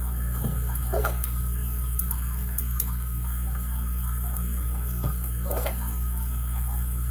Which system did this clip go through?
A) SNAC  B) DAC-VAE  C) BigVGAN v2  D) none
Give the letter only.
A